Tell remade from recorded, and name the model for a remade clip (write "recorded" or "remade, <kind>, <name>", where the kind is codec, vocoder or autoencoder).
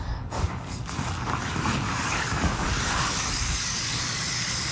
remade, codec, DAC